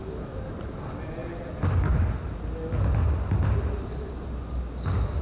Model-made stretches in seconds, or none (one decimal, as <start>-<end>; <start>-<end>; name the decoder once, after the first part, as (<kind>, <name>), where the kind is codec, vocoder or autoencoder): none